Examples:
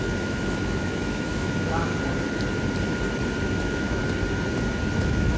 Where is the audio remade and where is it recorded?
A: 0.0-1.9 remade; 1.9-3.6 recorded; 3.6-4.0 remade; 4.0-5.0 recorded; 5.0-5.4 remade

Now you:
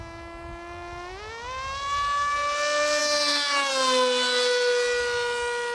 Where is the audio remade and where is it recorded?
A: 0.0-3.0 recorded; 3.0-3.7 remade; 3.7-5.7 recorded

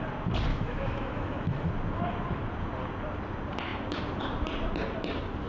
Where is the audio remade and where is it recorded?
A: 0.0-0.5 recorded; 0.5-1.7 remade; 1.7-5.5 recorded

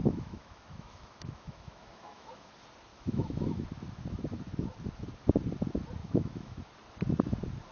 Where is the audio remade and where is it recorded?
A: 0.0-2.5 remade; 2.5-2.9 recorded; 2.9-3.6 remade; 3.6-6.0 recorded; 6.0-6.6 remade; 6.6-7.7 recorded

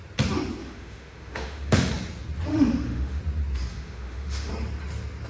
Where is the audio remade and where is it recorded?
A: 0.0-0.6 recorded; 0.6-1.9 remade; 1.9-2.5 recorded; 2.5-3.2 remade; 3.2-3.7 recorded; 3.7-4.5 remade; 4.5-5.3 recorded

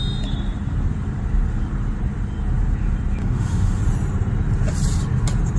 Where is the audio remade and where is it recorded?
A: 0.0-3.2 recorded; 3.2-3.8 remade; 3.8-5.6 recorded

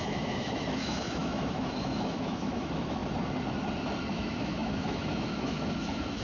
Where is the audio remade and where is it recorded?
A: 0.0-3.0 remade; 3.0-4.1 recorded; 4.1-6.2 remade